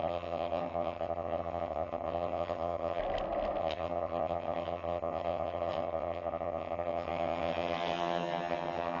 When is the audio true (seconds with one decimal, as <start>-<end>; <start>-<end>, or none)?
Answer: 3.0-3.6